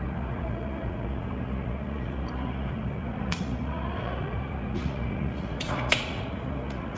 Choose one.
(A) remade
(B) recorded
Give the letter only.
A